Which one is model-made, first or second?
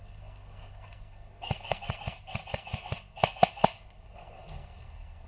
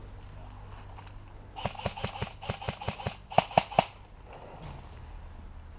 first